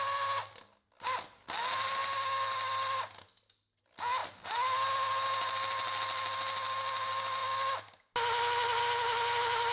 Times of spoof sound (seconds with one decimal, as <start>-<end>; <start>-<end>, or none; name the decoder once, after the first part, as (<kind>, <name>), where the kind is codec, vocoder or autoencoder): none